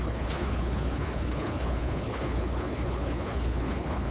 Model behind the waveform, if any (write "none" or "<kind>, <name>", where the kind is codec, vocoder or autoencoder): codec, HILCodec